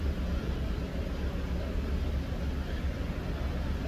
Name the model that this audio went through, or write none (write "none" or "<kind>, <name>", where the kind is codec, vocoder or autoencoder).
none